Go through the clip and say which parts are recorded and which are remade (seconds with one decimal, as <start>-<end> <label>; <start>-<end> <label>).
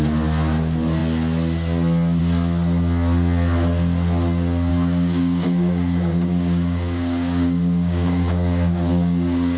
0.0-4.7 recorded; 4.7-9.6 remade